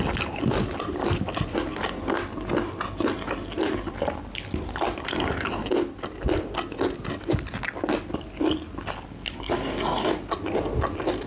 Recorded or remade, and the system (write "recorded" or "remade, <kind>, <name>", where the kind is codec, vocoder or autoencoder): recorded